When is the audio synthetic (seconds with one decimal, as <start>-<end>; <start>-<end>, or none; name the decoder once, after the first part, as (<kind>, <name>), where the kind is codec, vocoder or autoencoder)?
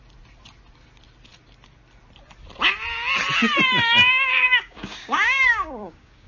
4.0-6.3 (codec, DAC)